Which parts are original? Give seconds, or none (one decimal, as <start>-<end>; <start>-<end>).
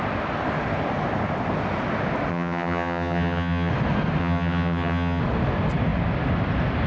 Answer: 0.0-2.3; 3.7-4.2; 5.2-6.9